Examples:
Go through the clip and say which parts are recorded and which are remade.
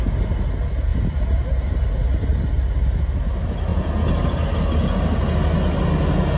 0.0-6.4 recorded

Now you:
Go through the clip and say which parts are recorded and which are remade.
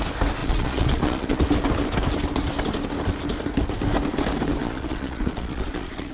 0.0-0.4 recorded; 0.4-1.4 remade; 1.4-4.6 recorded; 4.6-6.1 remade